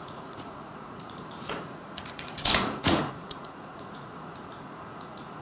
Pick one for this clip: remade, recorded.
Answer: remade